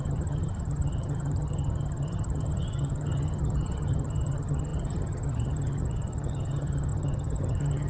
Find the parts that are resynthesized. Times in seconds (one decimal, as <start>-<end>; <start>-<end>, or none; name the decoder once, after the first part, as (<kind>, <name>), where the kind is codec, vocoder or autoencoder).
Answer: 0.0-7.9 (vocoder, HiFi-GAN)